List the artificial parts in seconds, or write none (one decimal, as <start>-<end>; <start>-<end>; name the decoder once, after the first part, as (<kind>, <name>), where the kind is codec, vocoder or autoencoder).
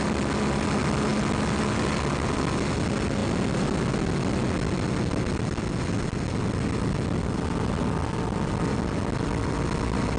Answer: none